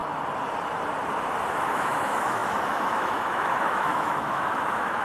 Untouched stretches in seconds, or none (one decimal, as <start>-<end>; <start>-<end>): 0.0-1.5